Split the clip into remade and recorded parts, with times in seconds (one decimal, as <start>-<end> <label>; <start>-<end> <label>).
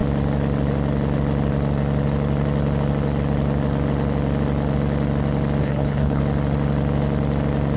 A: 0.0-5.6 recorded; 5.6-6.2 remade; 6.2-7.8 recorded